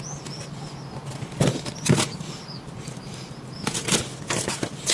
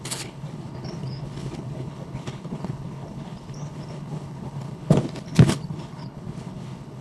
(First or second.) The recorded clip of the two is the first